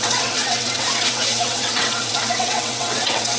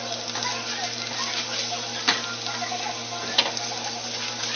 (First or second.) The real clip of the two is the second